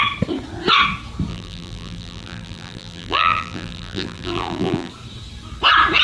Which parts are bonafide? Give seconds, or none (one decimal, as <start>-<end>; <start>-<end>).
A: 0.0-1.3; 4.9-6.0